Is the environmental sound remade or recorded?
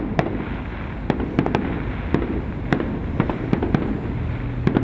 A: recorded